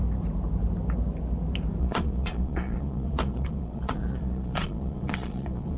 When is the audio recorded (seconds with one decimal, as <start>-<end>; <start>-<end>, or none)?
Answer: 0.0-1.8